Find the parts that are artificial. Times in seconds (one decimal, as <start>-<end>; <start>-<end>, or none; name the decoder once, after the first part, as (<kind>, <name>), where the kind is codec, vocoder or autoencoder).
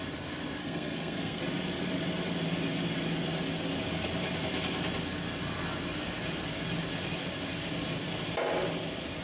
0.6-1.4 (codec, SNAC)